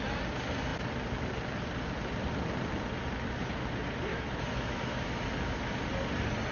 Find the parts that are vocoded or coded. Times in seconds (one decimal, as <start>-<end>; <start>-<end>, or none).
4.1-5.2